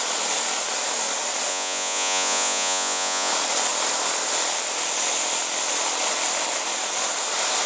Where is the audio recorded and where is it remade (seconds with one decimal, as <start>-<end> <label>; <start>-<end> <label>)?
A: 0.0-1.5 recorded; 1.5-3.3 remade; 3.3-7.7 recorded